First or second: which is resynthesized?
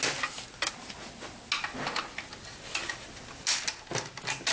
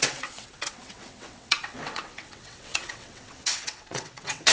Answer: second